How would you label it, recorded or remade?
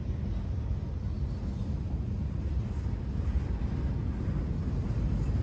recorded